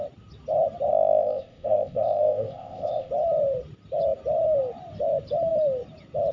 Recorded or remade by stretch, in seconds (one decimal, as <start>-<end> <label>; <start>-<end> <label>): 0.0-0.9 recorded; 0.9-3.1 remade; 3.1-6.3 recorded